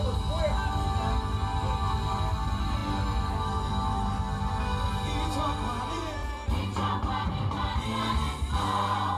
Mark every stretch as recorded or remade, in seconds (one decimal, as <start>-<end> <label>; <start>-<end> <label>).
0.0-9.2 recorded